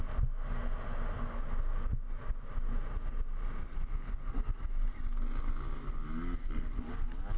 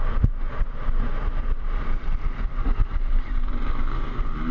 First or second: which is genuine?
first